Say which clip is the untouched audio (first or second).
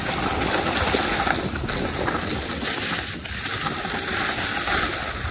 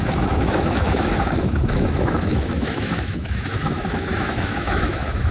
first